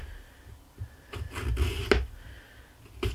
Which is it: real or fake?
real